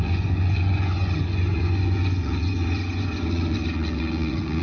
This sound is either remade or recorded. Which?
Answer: remade